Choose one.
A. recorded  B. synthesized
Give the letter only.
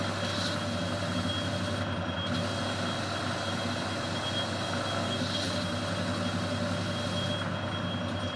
A